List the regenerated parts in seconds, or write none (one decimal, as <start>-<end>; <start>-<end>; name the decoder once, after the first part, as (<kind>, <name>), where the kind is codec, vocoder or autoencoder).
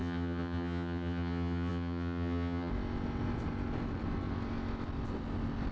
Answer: 0.0-2.7 (vocoder, HiFi-GAN)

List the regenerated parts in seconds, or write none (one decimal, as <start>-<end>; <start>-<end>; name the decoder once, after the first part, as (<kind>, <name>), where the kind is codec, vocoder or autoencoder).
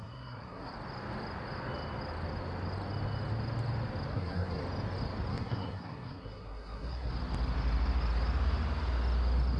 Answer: 0.0-0.7 (codec, SNAC); 4.1-4.6; 5.3-7.1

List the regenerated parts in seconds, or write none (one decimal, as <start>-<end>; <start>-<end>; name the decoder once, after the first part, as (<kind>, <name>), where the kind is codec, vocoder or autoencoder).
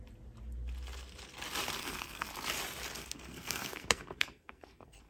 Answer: 1.8-2.3 (codec, SNAC); 3.0-5.1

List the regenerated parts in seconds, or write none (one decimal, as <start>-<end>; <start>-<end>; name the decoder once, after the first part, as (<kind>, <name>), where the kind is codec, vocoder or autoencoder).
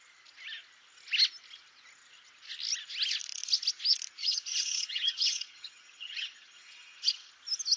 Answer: 4.2-7.3 (vocoder, HiFi-GAN)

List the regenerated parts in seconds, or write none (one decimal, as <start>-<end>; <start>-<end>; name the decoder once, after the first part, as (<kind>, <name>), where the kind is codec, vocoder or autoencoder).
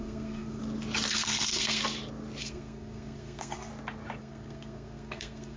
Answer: 0.0-0.6 (codec, SNAC); 1.1-1.8; 2.4-3.7; 4.2-5.6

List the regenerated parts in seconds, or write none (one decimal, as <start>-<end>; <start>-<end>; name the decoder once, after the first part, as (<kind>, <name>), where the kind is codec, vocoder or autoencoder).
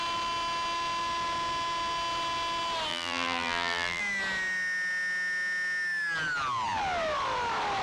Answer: 2.9-4.0 (vocoder, BigVGAN v2)